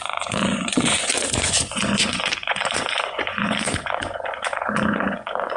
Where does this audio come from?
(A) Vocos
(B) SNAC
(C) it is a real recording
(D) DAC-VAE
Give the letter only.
A